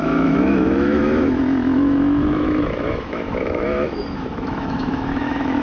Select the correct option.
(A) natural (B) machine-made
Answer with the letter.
B